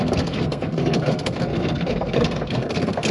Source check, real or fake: fake